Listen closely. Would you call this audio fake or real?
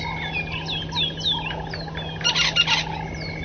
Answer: real